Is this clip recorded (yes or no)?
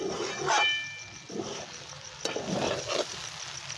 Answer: yes